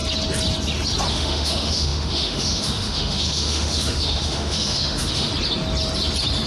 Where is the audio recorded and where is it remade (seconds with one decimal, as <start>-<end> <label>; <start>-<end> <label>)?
0.0-1.1 recorded; 1.1-5.3 remade; 5.3-6.5 recorded